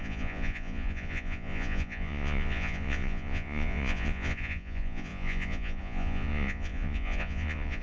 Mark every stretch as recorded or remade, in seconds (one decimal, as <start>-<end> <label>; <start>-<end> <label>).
0.0-7.8 remade